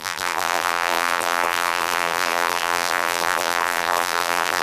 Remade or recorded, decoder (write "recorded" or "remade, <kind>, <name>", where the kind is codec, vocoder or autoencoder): remade, vocoder, BigVGAN v2